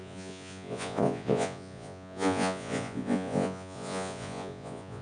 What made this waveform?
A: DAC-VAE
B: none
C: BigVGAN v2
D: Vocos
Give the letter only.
D